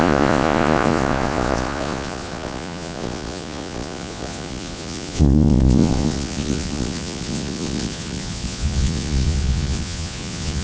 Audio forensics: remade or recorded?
remade